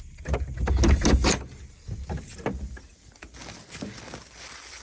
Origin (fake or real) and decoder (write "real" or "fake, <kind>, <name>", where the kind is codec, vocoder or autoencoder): real